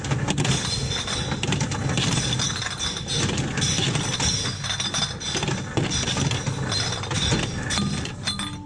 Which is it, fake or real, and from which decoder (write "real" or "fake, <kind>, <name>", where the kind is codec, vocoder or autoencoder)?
real